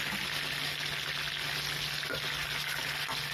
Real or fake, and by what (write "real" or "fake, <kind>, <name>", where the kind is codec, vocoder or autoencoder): real